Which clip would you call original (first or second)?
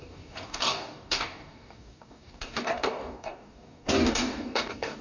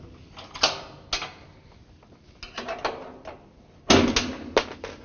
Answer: second